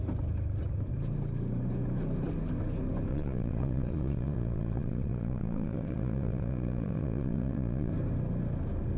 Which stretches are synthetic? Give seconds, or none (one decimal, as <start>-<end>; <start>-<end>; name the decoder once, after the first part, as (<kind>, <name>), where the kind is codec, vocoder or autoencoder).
3.1-7.9 (vocoder, Vocos)